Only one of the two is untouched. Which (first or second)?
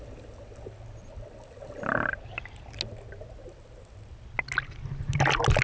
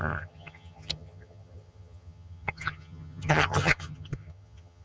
first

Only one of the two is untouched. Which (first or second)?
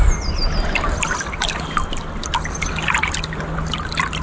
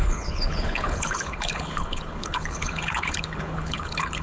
first